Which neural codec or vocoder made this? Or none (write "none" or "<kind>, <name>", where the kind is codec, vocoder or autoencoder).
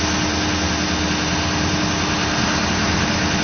none